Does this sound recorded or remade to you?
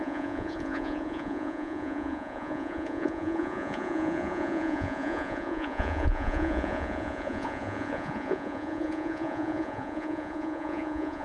remade